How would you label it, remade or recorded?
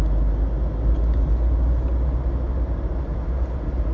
recorded